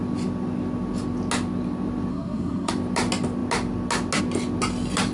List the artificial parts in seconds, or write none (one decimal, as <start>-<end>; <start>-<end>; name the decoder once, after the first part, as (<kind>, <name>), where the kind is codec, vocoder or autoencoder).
2.1-2.7 (codec, SNAC)